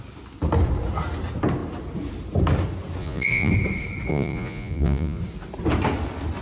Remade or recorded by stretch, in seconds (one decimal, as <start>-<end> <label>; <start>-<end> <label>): 0.0-3.0 recorded; 3.0-3.5 remade; 3.5-4.1 recorded; 4.1-5.2 remade; 5.2-6.4 recorded